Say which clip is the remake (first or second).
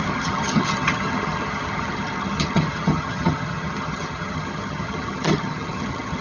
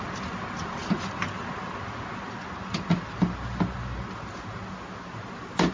first